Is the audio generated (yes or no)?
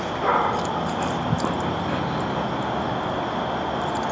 no